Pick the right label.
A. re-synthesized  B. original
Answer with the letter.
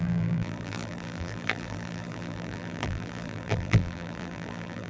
A